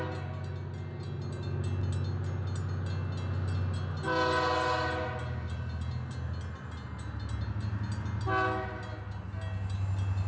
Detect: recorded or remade recorded